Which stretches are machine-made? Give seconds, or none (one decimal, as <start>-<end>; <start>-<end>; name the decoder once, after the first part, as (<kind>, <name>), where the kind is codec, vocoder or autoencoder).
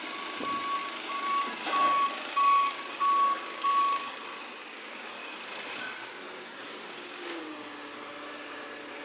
0.8-4.1 (codec, DAC); 4.6-5.1; 6.0-7.4